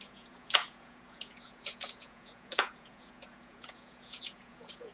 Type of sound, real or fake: fake